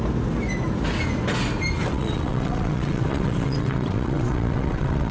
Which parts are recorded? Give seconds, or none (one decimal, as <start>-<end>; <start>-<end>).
0.0-1.9

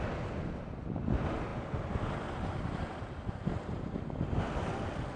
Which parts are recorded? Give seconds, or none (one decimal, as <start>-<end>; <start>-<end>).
0.0-1.5; 4.4-5.2

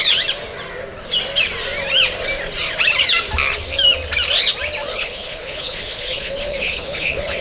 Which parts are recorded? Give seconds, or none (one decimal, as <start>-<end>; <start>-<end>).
0.0-4.9